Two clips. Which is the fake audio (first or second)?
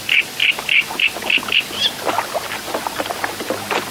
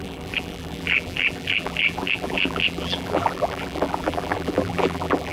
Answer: second